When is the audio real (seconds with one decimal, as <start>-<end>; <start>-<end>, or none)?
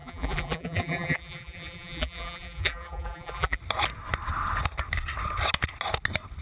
3.6-6.4